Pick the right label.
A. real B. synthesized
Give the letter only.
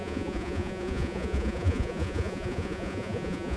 B